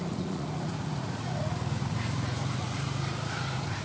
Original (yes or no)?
no